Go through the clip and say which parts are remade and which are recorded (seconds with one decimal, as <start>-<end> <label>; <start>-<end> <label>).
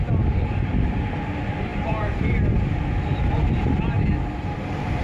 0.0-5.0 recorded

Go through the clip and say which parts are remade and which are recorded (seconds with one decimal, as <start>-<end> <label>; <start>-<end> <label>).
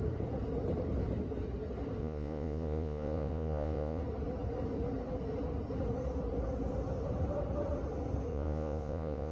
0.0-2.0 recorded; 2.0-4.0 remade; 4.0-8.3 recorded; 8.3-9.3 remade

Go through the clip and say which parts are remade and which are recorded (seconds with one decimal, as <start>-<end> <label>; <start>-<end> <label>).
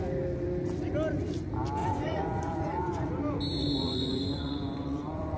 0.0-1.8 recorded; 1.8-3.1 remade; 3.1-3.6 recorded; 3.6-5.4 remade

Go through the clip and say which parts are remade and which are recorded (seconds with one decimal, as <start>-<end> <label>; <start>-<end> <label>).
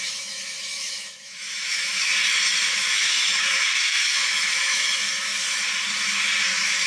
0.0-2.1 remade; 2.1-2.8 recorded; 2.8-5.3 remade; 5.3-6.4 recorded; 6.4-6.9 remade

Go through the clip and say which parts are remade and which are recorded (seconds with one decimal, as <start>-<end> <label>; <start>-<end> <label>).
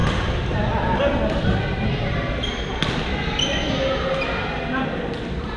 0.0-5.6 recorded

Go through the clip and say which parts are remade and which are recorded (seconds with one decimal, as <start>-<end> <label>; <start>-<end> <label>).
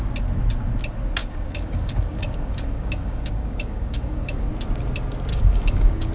0.0-1.2 recorded; 1.2-4.5 remade; 4.5-5.3 recorded; 5.3-6.1 remade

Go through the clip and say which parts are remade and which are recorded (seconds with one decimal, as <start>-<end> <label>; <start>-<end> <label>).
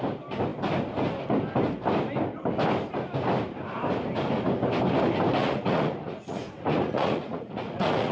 0.0-5.4 recorded; 5.4-8.1 remade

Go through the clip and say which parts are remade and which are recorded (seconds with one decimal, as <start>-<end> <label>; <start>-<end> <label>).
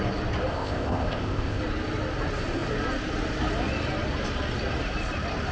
0.0-0.5 recorded; 0.5-1.6 remade; 1.6-5.5 recorded